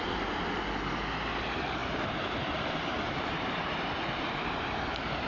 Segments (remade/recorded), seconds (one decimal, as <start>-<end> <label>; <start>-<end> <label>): 0.0-1.8 recorded; 1.8-5.3 remade